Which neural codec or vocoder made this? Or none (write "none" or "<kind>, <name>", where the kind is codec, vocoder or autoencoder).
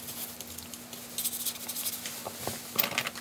none